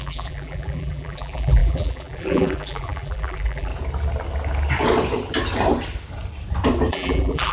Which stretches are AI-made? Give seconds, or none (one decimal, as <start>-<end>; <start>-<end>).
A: 0.0-3.7; 6.9-7.5